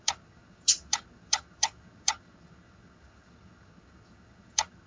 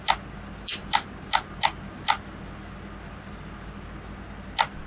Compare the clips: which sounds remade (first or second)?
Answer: first